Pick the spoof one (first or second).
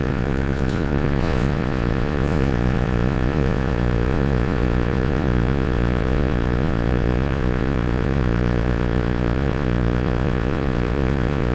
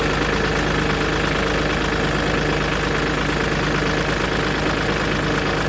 first